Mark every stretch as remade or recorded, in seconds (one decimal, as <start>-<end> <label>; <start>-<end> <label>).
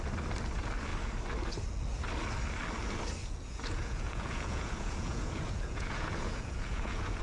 0.0-3.2 recorded; 3.2-7.2 remade